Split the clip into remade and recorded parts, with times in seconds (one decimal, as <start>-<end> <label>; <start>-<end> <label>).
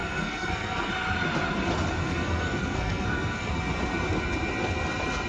0.0-0.9 remade; 0.9-2.0 recorded; 2.0-3.5 remade; 3.5-5.3 recorded